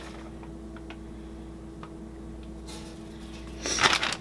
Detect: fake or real real